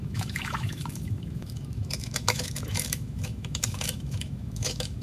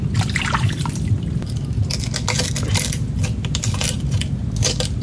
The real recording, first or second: second